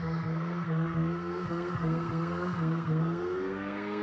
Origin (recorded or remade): remade